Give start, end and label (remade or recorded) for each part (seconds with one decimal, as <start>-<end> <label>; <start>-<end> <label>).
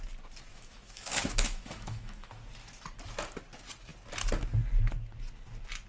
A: 0.0-0.5 recorded; 0.5-2.4 remade; 2.4-5.9 recorded